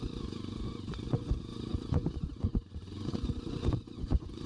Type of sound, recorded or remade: remade